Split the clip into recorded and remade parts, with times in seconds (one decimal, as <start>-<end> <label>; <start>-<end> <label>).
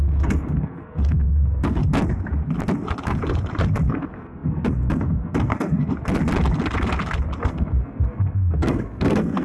0.0-1.8 remade; 1.8-3.9 recorded; 3.9-5.8 remade; 5.8-7.4 recorded; 7.4-9.4 remade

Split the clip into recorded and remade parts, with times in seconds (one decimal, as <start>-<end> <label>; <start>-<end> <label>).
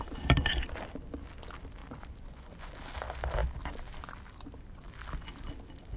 0.0-1.8 recorded; 1.8-2.7 remade; 2.7-6.0 recorded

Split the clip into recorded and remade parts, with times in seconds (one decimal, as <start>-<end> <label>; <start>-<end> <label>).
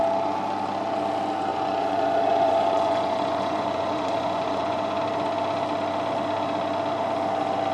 0.0-1.5 recorded; 1.5-5.0 remade; 5.0-7.7 recorded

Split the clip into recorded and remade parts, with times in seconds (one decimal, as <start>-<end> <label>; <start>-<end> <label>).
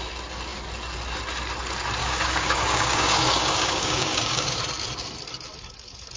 0.0-2.0 recorded; 2.0-4.6 remade; 4.6-6.2 recorded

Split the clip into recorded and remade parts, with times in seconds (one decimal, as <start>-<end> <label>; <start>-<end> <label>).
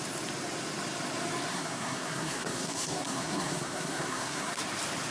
0.0-1.5 recorded; 1.5-4.6 remade; 4.6-5.1 recorded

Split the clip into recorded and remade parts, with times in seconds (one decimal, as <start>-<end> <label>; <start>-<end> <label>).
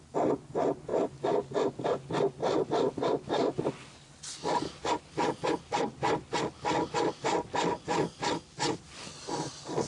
0.0-9.9 recorded